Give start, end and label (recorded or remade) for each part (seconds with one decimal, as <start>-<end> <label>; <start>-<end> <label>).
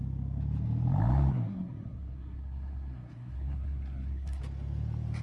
0.0-1.3 recorded; 1.3-4.4 remade; 4.4-5.2 recorded